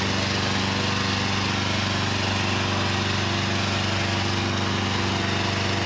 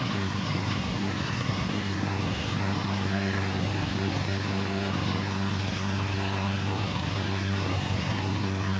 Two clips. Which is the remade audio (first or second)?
second